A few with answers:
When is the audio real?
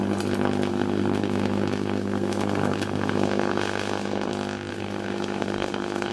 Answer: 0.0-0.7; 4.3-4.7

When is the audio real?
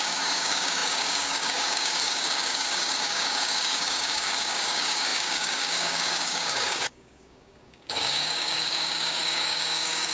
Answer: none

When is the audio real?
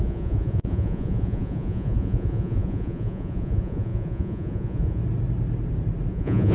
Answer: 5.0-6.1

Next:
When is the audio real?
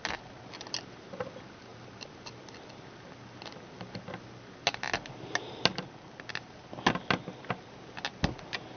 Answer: 0.0-8.8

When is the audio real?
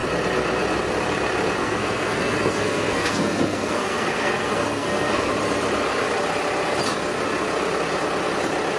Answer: 0.0-1.6; 5.3-8.8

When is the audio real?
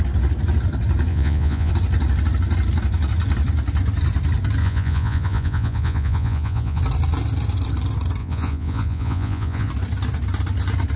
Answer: 0.0-1.1; 1.7-4.6; 6.8-8.2; 9.7-11.0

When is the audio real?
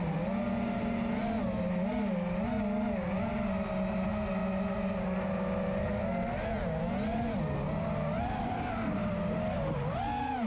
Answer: 0.0-10.5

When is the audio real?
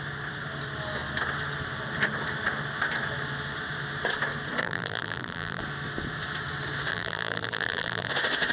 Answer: 0.0-4.6; 5.6-6.9; 8.1-8.5